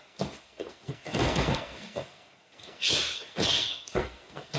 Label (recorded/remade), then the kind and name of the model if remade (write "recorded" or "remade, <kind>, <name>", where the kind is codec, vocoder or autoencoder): remade, codec, SNAC